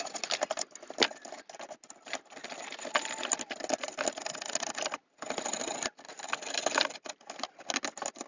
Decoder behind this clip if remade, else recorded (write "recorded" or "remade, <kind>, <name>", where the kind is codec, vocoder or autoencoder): recorded